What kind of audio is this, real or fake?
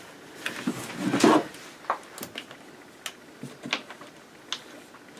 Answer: real